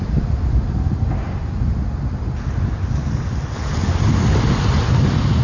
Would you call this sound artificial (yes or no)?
no